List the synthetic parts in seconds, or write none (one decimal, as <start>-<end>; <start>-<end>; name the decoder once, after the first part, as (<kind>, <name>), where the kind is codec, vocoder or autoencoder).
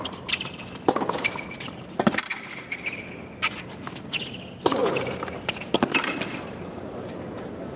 none